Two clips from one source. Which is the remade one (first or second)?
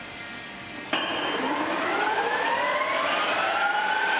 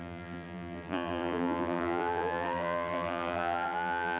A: second